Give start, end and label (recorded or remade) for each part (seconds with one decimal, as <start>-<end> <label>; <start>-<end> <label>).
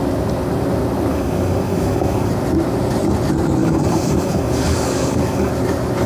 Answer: 0.0-1.1 recorded; 1.1-2.3 remade; 2.3-3.6 recorded; 3.6-5.5 remade; 5.5-6.1 recorded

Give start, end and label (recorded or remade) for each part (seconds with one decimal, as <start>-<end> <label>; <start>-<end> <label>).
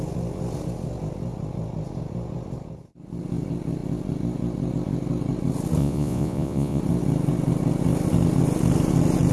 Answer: 0.0-5.8 recorded; 5.8-6.8 remade; 6.8-9.3 recorded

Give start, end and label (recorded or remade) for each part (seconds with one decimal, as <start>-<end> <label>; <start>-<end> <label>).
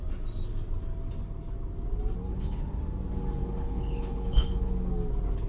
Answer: 0.0-2.3 recorded; 2.3-2.8 remade; 2.8-3.4 recorded; 3.4-4.7 remade; 4.7-5.5 recorded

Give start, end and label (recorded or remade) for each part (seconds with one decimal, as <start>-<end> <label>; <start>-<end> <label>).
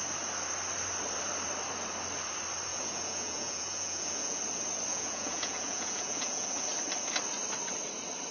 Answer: 0.0-2.7 recorded; 2.7-4.4 remade; 4.4-4.9 recorded; 4.9-6.6 remade; 6.6-8.3 recorded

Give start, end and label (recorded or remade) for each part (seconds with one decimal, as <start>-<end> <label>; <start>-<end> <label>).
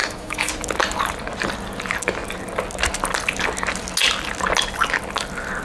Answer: 0.0-0.5 remade; 0.5-5.6 recorded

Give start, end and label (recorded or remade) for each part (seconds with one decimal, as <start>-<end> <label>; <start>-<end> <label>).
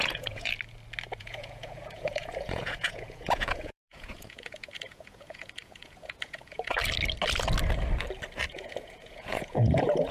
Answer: 0.0-0.5 remade; 0.5-1.2 recorded; 1.2-6.8 remade; 6.8-8.5 recorded; 8.5-10.1 remade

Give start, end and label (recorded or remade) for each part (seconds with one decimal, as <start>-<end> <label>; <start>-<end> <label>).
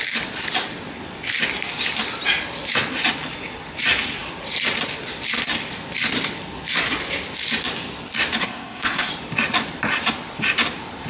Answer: 0.0-8.4 recorded; 8.4-9.1 remade; 9.1-11.1 recorded